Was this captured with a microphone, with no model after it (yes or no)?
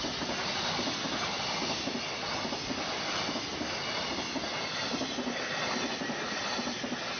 yes